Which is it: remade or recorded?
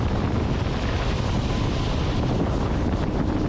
recorded